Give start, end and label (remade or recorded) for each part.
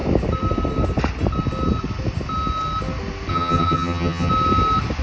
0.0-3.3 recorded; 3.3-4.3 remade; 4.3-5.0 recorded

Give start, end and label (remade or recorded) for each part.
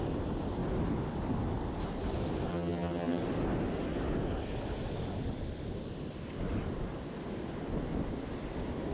0.0-2.5 recorded; 2.5-3.2 remade; 3.2-8.9 recorded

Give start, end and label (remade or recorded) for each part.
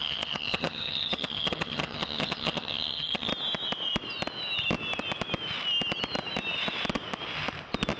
0.0-3.3 remade; 3.3-8.0 recorded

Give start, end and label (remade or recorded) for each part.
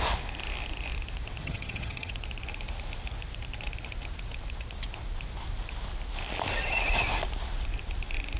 0.0-1.4 recorded; 1.4-2.1 remade; 2.1-8.4 recorded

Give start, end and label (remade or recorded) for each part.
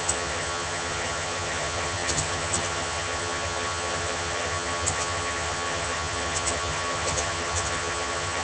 0.0-8.4 remade